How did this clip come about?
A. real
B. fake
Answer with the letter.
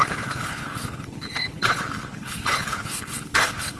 B